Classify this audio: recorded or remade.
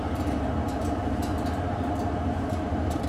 remade